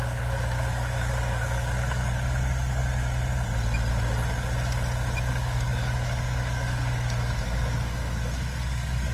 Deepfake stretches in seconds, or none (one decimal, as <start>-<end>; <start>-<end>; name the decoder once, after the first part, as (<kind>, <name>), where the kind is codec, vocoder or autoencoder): 0.0-2.8 (codec, DAC); 5.3-9.1